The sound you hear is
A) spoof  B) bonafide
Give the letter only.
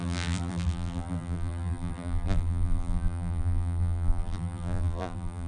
A